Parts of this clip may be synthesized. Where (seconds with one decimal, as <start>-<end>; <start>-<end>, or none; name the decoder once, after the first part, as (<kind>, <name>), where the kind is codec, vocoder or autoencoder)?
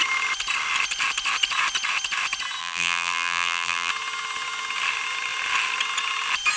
2.6-3.9 (vocoder, BigVGAN v2)